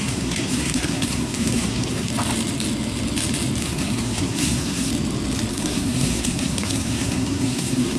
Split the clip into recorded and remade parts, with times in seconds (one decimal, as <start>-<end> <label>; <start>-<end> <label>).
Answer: 0.0-2.1 remade; 2.1-3.6 recorded; 3.6-4.9 remade; 4.9-5.5 recorded; 5.5-8.0 remade